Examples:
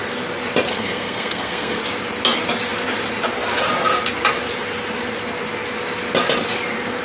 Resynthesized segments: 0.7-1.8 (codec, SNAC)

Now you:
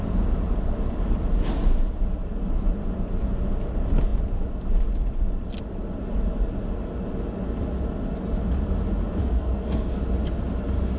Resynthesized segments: 9.2-10.0 (codec, SNAC)